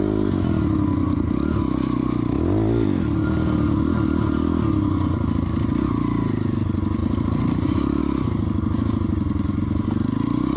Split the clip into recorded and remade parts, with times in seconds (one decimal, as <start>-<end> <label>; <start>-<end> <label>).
0.0-7.0 recorded; 7.0-8.0 remade; 8.0-10.6 recorded